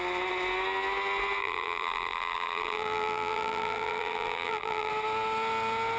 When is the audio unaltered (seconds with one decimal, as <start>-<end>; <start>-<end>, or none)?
0.0-1.4; 4.9-6.0